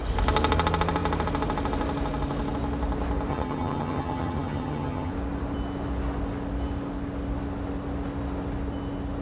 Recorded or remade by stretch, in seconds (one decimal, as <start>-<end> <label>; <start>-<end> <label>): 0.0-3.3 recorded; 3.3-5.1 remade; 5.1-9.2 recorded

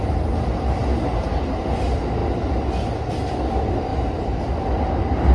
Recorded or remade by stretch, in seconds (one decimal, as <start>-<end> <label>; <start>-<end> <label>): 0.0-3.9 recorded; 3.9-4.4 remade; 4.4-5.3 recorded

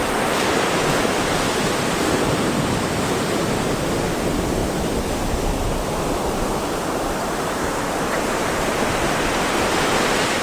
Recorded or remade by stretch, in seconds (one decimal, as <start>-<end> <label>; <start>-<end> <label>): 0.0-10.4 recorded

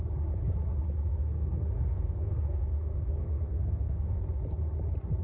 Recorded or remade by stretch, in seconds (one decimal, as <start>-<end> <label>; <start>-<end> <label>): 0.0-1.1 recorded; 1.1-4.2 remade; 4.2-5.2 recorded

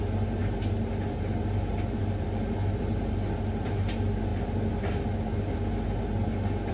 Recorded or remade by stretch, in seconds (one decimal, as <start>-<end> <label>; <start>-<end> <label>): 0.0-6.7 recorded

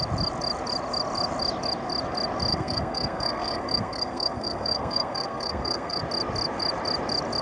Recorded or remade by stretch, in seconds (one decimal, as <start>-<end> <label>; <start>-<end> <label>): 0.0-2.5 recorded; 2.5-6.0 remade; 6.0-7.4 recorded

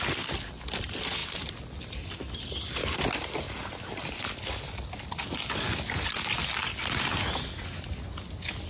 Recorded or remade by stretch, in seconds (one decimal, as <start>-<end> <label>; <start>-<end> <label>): 0.0-8.7 recorded

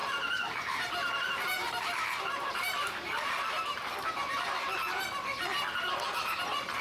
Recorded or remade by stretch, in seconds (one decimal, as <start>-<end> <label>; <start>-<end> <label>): 0.0-4.1 remade; 4.1-6.8 recorded